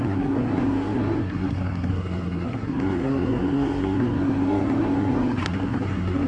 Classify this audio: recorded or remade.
remade